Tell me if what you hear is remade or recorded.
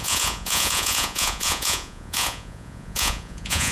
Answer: remade